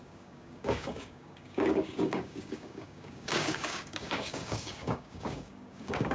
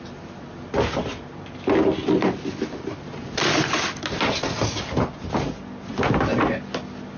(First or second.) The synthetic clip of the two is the first